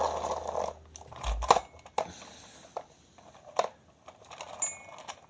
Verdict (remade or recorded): recorded